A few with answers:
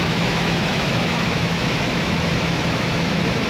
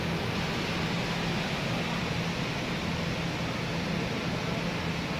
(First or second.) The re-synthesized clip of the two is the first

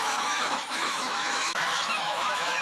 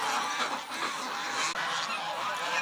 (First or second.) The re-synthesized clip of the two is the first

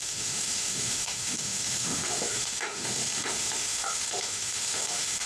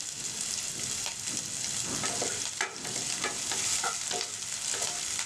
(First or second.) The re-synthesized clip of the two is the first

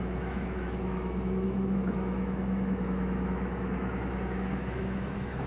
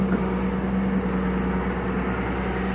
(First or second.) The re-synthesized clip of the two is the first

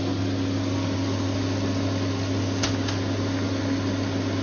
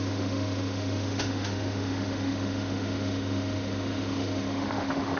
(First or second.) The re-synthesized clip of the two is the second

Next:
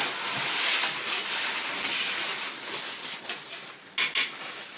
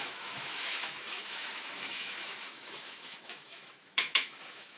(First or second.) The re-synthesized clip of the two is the second